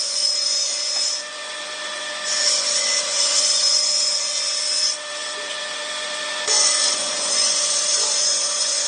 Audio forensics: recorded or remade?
remade